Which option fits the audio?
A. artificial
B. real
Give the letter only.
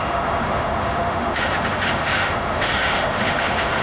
A